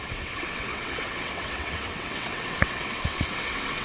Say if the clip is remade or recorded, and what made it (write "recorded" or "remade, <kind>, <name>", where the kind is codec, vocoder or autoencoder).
remade, vocoder, WaveNeXt